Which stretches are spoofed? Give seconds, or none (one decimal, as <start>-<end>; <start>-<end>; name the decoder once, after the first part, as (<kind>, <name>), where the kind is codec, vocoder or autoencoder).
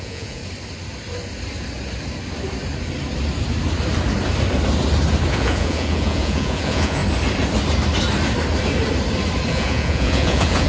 0.0-0.4 (vocoder, Vocos); 5.3-7.0; 9.5-10.7